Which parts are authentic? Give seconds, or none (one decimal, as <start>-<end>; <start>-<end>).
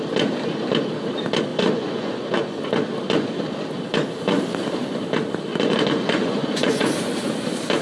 0.0-1.5; 2.6-5.5; 6.9-7.8